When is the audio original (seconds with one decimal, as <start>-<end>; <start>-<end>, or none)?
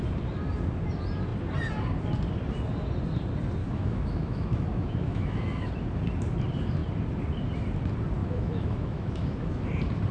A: 0.0-3.6; 5.7-8.2; 9.7-10.1